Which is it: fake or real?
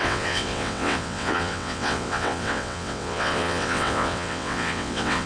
fake